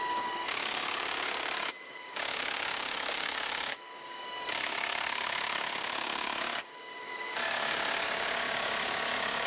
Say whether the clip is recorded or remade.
remade